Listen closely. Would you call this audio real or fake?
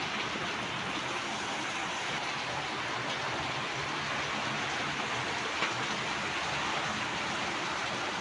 real